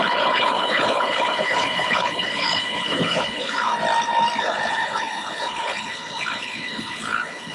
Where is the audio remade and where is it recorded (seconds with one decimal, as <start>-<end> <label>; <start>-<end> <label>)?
0.0-3.7 remade; 3.7-4.4 recorded; 4.4-7.5 remade